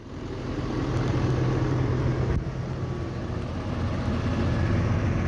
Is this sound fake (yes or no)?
no